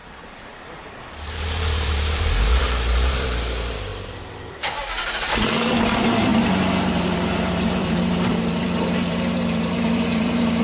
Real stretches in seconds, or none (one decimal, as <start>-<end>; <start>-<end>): none

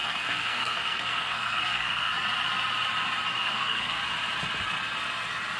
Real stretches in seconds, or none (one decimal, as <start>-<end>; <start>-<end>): 2.1-3.4; 4.0-5.6

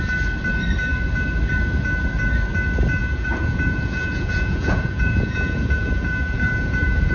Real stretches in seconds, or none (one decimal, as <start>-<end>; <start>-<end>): 0.0-3.0

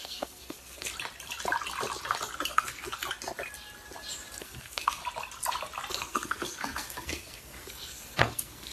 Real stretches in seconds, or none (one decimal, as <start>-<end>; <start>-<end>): 0.9-2.5; 3.0-4.4; 5.0-5.9